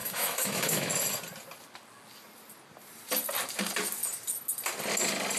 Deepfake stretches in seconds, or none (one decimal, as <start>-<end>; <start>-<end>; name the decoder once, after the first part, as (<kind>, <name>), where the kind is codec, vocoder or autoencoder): 0.0-0.9 (autoencoder, DAC-VAE)

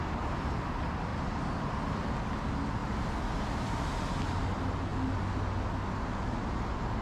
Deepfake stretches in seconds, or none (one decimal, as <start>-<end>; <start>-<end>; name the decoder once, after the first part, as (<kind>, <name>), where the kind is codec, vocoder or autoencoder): none

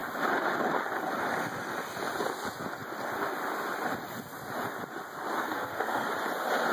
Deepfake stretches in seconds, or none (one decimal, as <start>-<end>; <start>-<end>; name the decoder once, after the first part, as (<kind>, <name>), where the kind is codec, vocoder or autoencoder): 5.4-6.1 (codec, SNAC)

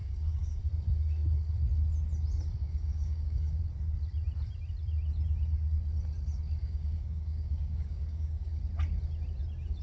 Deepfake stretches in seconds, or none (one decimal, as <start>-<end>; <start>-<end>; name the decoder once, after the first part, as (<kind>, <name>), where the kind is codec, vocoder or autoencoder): 0.0-0.6 (codec, DAC); 2.6-3.6; 6.6-8.6

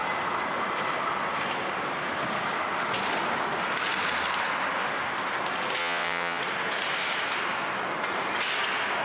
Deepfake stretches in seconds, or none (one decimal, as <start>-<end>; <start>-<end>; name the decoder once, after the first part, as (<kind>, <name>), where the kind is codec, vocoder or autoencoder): 5.8-6.4 (vocoder, WaveNeXt)

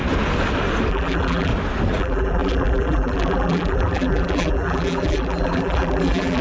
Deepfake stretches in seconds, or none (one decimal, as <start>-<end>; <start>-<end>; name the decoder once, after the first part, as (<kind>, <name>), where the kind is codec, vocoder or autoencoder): 0.9-1.5 (vocoder, BigVGAN v2); 2.0-6.4